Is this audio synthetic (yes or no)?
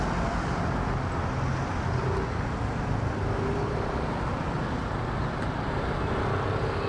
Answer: no